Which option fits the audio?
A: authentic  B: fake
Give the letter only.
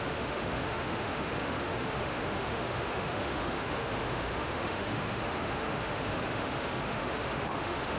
B